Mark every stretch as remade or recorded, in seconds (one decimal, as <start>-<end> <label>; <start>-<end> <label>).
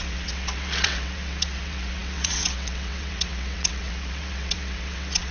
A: 0.0-5.3 remade